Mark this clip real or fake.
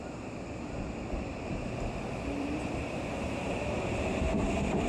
fake